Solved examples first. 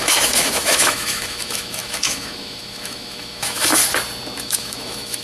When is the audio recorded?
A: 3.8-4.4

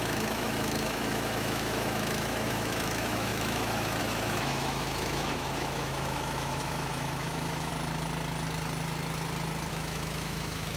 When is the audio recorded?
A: 7.7-9.7

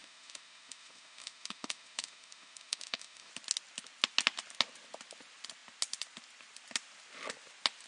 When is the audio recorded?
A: 3.3-7.9

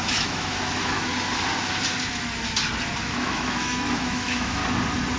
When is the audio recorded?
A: 1.1-3.0; 4.6-5.2